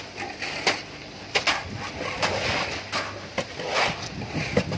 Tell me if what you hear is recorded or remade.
recorded